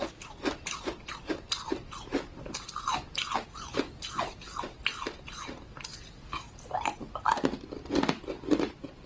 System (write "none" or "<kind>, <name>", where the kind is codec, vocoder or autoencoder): none